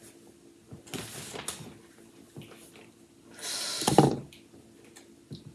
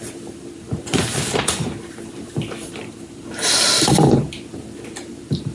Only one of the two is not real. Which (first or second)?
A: second